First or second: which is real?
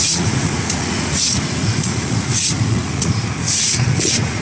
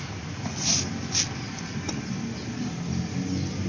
second